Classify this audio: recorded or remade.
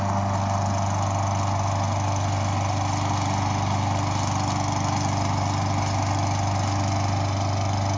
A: recorded